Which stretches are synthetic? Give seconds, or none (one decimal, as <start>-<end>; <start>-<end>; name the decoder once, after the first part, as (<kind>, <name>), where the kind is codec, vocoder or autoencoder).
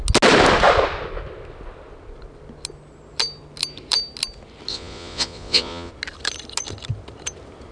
4.7-5.9 (vocoder, Vocos)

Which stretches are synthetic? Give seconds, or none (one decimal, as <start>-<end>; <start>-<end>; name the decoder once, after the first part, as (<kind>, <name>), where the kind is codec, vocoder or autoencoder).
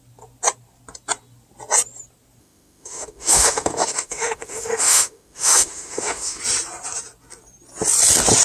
2.4-6.4 (autoencoder, DAC-VAE)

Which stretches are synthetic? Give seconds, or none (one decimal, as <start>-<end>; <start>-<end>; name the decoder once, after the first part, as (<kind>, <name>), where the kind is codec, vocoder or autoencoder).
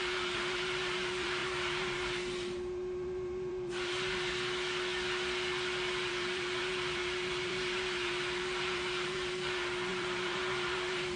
0.0-4.3 (vocoder, BigVGAN v2); 6.1-11.2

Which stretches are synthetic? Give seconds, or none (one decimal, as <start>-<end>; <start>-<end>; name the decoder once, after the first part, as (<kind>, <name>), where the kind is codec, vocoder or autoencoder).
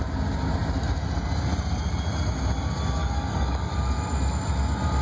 3.0-3.7 (codec, DAC)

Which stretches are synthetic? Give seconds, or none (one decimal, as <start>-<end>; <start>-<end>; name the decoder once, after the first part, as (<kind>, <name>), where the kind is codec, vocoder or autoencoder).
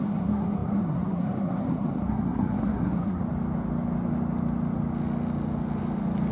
0.0-3.2 (codec, SNAC)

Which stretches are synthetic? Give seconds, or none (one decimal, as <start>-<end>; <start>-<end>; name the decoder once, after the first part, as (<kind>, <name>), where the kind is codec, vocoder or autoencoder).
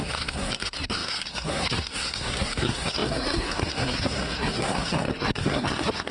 0.0-6.1 (codec, SNAC)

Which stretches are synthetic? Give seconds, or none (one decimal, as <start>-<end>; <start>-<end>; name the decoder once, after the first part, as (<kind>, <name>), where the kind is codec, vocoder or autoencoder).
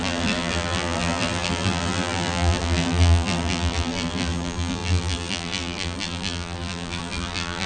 0.0-7.7 (vocoder, BigVGAN v2)